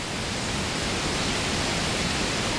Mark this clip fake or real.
real